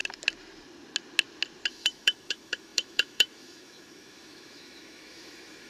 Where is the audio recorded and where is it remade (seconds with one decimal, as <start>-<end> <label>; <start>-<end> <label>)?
0.0-1.7 recorded; 1.7-5.7 remade